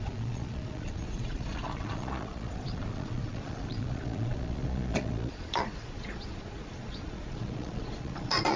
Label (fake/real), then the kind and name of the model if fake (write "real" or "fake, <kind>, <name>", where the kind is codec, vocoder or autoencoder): fake, vocoder, Vocos